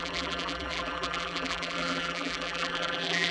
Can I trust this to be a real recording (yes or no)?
no